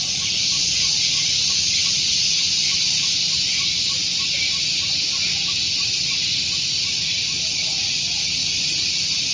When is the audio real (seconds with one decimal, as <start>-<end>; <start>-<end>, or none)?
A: 2.6-7.0; 8.4-8.9